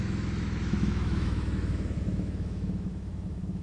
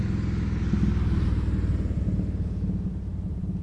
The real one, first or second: second